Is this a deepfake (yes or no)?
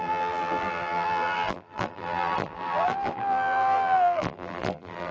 yes